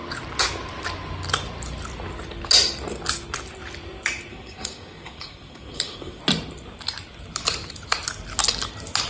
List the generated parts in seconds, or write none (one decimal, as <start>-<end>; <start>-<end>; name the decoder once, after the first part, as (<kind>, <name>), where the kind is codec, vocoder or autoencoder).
4.3-6.2 (codec, DAC)